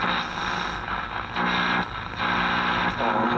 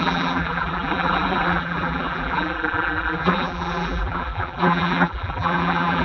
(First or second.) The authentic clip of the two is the first